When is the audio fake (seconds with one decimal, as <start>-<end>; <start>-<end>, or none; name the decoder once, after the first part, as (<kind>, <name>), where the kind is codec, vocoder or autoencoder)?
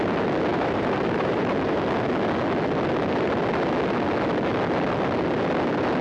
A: 0.5-1.9 (vocoder, BigVGAN v2)